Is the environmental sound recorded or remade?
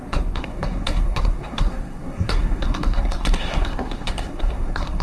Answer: remade